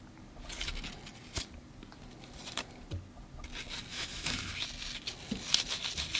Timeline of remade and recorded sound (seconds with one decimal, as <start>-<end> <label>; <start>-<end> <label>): 0.0-3.9 recorded; 3.9-4.5 remade; 4.5-6.2 recorded